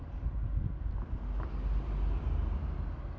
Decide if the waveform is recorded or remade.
recorded